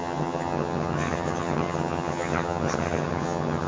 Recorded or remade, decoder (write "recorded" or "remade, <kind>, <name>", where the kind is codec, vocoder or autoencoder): remade, vocoder, HiFi-GAN